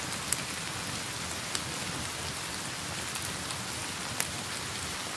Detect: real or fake real